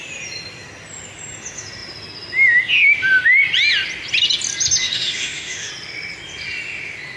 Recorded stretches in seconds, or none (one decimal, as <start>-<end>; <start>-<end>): 0.0-4.8; 5.7-7.2